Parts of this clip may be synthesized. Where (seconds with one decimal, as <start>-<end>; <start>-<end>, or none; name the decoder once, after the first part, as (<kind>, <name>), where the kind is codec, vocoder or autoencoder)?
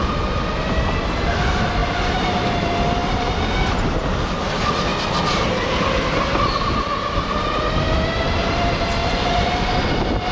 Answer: 9.0-9.5 (vocoder, Vocos)